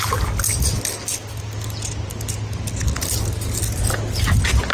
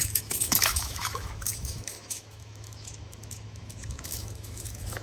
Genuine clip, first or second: first